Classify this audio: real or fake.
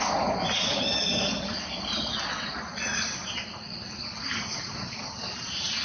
real